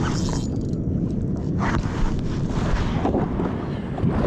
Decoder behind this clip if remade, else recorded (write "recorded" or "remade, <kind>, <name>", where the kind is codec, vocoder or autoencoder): recorded